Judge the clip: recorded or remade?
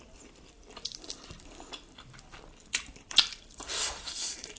remade